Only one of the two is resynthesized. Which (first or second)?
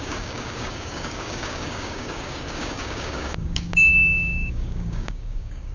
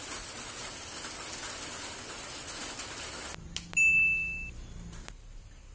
first